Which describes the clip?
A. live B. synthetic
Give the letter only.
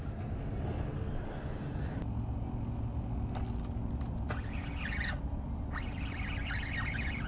A